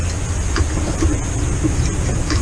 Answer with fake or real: real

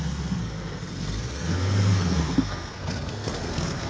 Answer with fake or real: fake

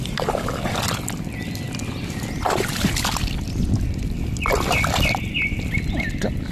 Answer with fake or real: real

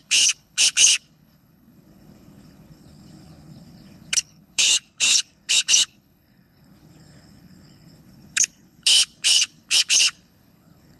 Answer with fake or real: fake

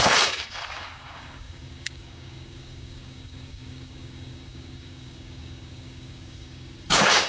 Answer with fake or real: fake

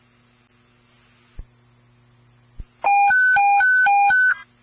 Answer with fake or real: real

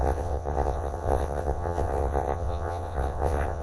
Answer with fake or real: fake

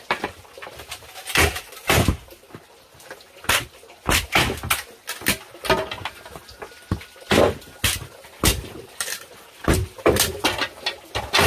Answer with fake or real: real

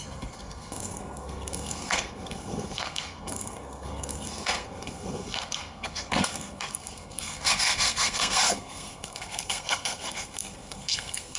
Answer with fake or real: fake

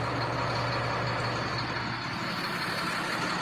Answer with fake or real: real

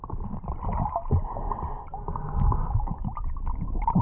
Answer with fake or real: real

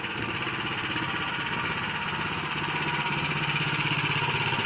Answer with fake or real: real